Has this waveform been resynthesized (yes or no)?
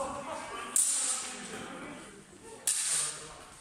no